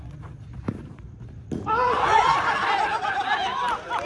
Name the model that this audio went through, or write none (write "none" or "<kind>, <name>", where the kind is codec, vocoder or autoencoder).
none